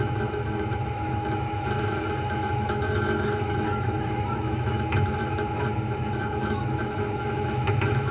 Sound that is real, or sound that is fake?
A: fake